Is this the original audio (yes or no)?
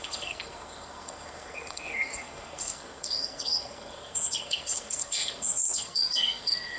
no